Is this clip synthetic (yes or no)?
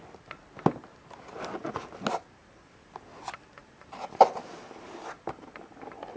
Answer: no